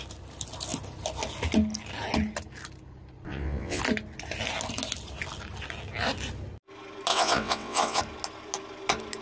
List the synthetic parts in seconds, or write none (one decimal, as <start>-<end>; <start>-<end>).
3.3-3.8; 7.1-8.0